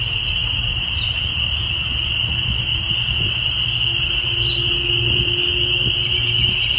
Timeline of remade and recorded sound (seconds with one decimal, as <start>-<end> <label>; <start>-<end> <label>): 0.0-6.8 recorded